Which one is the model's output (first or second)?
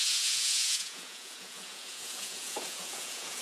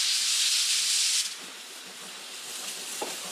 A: first